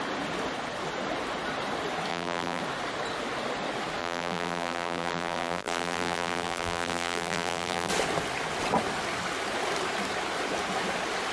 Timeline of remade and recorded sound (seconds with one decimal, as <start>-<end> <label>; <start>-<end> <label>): 0.0-2.1 recorded; 2.1-2.6 remade; 2.6-4.0 recorded; 4.0-7.9 remade; 7.9-11.3 recorded